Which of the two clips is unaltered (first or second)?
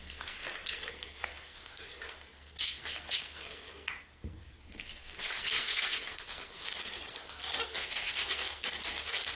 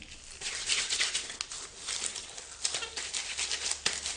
second